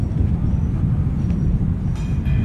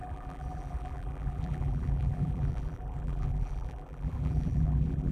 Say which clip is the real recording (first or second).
first